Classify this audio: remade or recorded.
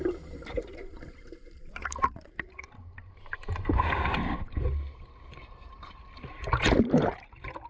remade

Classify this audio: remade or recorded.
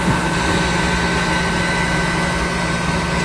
recorded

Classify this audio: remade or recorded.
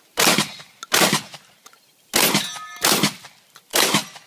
recorded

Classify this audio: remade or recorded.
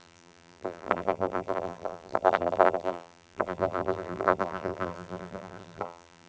remade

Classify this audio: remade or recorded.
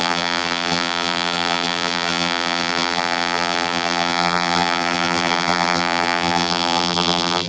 remade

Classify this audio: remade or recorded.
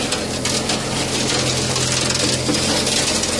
recorded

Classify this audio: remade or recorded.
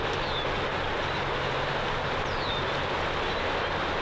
recorded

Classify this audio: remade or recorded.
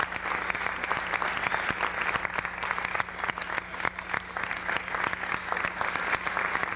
recorded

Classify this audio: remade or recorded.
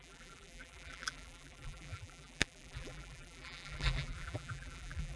remade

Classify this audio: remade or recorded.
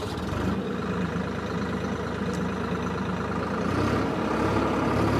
recorded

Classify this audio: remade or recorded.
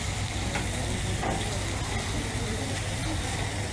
recorded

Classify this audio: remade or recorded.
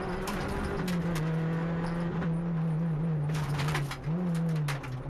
recorded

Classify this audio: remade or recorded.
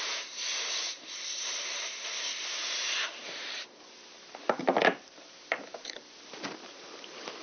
remade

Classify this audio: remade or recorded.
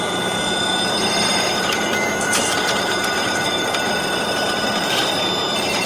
remade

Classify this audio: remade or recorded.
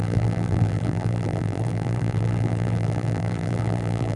remade